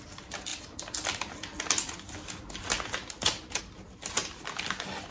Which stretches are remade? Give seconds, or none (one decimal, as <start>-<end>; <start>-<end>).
none